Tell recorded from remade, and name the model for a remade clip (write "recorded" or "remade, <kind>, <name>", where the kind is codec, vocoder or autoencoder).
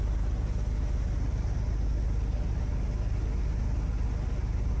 recorded